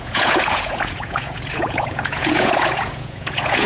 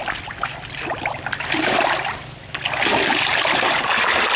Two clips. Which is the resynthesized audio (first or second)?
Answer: first